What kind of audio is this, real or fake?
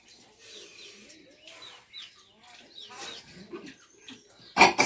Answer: real